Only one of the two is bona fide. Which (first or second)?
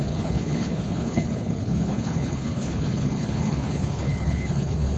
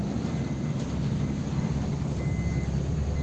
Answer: second